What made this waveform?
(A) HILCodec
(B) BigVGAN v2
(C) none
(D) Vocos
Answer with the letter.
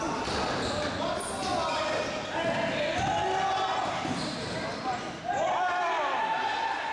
C